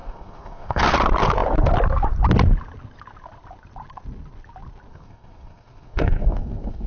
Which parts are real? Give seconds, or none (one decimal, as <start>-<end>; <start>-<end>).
0.8-4.9